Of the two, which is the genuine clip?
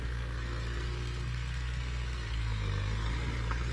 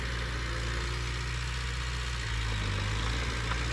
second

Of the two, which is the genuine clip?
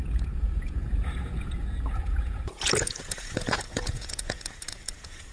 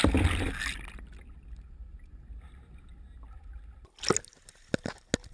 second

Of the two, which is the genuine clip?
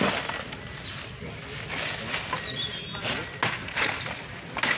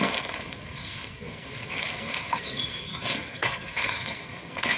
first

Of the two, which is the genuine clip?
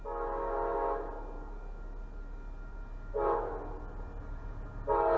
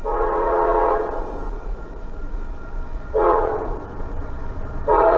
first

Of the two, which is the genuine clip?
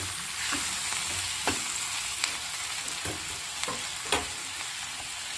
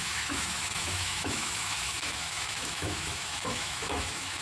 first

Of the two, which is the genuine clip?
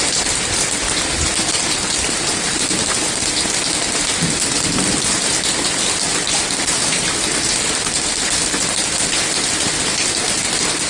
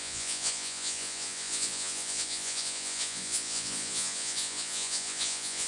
first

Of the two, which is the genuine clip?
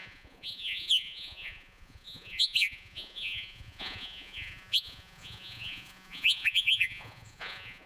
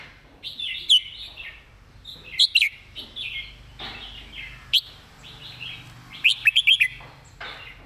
second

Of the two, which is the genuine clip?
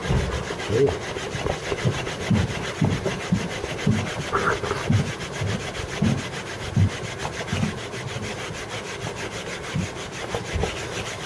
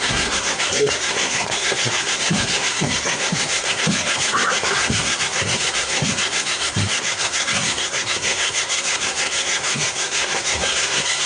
first